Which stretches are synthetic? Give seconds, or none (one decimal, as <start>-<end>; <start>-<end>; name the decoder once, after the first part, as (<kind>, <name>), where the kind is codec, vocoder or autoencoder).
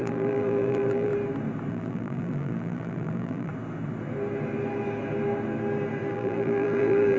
0.0-1.1 (vocoder, BigVGAN v2); 1.7-3.5; 6.1-7.2